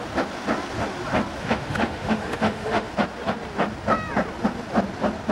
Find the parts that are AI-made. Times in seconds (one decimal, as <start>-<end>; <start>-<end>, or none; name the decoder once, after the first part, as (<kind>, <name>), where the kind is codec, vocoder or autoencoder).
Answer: 1.4-2.9 (autoencoder, DAC-VAE)